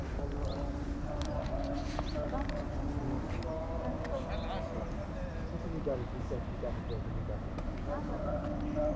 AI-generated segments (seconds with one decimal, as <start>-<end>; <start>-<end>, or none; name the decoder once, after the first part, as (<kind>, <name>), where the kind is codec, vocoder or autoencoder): none